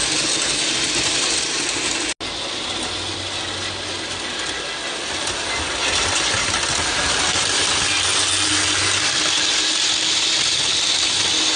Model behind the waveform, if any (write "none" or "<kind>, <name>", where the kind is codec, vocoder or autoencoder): none